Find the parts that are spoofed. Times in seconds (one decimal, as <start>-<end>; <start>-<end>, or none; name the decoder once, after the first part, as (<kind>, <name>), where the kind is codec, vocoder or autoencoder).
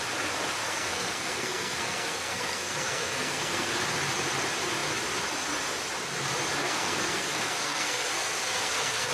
0.6-3.7 (codec, SNAC); 6.6-9.1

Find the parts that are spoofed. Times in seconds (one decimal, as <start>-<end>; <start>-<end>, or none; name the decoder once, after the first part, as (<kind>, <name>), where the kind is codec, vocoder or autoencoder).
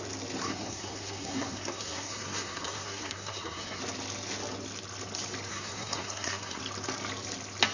0.4-3.8 (codec, SNAC); 5.5-6.6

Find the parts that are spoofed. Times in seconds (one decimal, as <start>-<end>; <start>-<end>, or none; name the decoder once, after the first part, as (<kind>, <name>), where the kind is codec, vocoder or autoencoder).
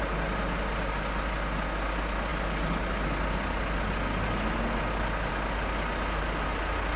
none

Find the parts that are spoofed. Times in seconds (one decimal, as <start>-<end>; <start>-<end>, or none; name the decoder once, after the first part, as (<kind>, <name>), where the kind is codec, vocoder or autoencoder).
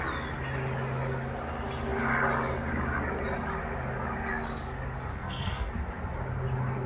5.1-5.7 (codec, SNAC)